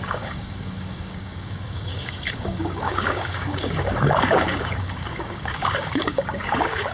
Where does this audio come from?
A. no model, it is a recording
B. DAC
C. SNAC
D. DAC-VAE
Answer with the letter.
B